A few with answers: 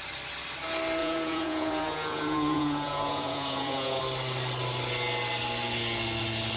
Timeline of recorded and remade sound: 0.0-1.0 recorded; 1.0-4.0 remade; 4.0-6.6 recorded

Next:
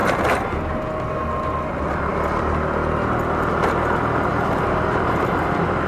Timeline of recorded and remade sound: 0.0-4.3 recorded; 4.3-5.9 remade

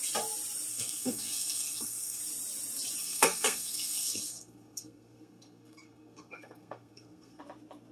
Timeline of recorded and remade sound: 0.0-0.7 recorded; 0.7-2.2 remade; 2.2-3.0 recorded; 3.0-7.4 remade; 7.4-7.9 recorded

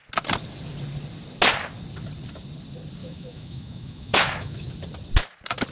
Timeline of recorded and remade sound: 0.0-3.0 recorded; 3.0-4.7 remade; 4.7-5.7 recorded

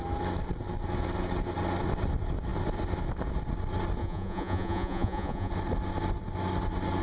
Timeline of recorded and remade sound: 0.0-4.0 recorded; 4.0-5.5 remade; 5.5-7.0 recorded